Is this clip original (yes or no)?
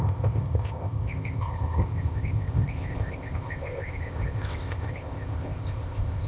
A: no